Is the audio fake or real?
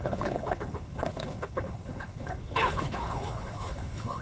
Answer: fake